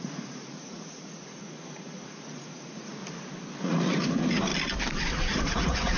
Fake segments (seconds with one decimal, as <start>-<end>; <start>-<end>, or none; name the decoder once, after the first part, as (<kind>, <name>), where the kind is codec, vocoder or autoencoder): 0.0-3.0 (vocoder, Vocos); 3.6-4.5; 5.1-6.0